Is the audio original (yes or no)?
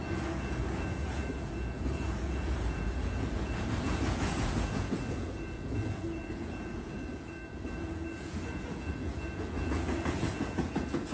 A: no